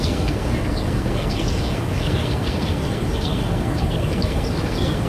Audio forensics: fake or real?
fake